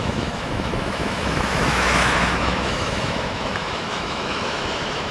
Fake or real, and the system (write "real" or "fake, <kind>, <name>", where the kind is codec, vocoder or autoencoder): fake, autoencoder, DAC-VAE